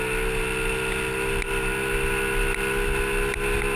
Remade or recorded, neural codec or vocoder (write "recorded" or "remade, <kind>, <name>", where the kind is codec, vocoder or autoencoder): recorded